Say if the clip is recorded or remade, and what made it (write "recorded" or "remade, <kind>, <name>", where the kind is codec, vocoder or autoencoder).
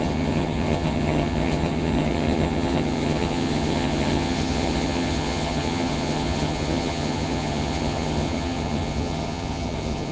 remade, vocoder, HiFi-GAN